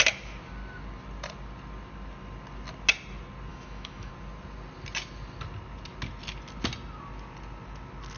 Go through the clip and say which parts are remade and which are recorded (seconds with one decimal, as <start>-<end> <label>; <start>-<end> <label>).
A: 0.0-3.5 recorded; 3.5-4.1 remade; 4.1-8.2 recorded